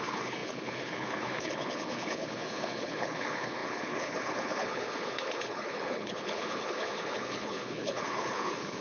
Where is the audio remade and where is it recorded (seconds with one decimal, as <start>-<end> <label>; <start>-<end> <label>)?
0.0-8.8 remade